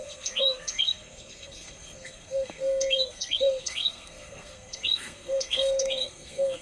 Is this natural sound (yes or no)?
no